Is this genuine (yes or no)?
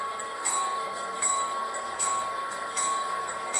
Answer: no